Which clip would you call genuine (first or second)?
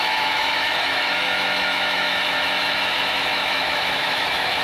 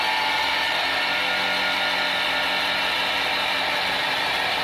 second